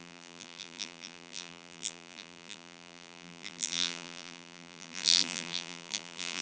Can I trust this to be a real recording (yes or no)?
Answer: no